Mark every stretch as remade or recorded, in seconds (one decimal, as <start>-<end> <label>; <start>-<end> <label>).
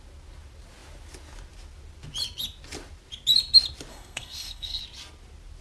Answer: 0.0-3.9 recorded; 3.9-4.8 remade; 4.8-5.6 recorded